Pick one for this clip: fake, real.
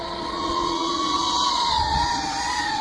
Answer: fake